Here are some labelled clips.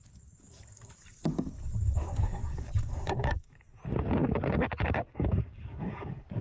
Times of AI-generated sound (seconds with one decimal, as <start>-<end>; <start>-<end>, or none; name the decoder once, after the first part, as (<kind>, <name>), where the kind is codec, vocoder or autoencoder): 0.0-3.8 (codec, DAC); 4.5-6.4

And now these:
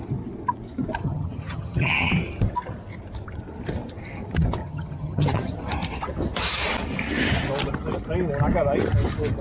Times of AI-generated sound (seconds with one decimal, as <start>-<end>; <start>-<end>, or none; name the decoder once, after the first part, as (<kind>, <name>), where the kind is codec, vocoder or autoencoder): 1.0-2.1 (vocoder, HiFi-GAN); 4.6-5.5

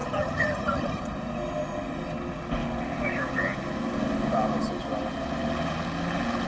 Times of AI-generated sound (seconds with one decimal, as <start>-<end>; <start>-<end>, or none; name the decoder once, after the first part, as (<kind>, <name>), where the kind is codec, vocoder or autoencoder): 0.0-1.0 (vocoder, HiFi-GAN)

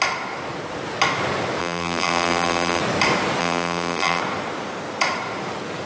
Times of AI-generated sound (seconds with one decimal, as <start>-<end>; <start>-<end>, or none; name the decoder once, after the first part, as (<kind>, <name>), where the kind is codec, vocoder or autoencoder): 1.6-2.8 (vocoder, BigVGAN v2); 3.4-4.2

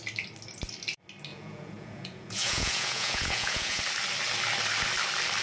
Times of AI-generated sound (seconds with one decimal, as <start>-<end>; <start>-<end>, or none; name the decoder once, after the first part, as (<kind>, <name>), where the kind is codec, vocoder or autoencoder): 1.3-3.8 (vocoder, Vocos)

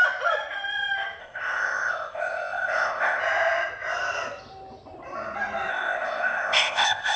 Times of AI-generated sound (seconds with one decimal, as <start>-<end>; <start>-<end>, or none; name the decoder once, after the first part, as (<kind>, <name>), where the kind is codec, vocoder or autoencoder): 1.2-3.2 (codec, ZipCodec); 5.7-7.2

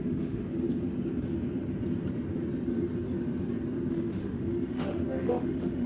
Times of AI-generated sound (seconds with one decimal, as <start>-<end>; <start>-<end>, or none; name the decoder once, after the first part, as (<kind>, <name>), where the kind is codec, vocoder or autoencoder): 0.0-0.4 (autoencoder, DAC-VAE); 3.9-5.9

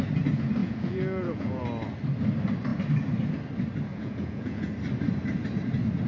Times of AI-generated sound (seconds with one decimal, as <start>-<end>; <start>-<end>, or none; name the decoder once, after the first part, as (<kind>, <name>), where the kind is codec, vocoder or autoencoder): 0.6-1.6 (vocoder, Vocos); 3.9-4.7